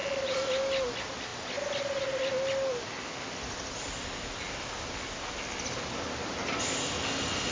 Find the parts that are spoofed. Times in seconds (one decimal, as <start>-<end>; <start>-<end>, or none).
none